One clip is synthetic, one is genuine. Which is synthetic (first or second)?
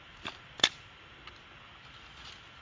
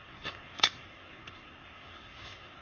second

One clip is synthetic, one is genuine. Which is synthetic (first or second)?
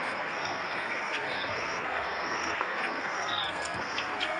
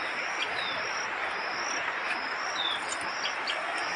first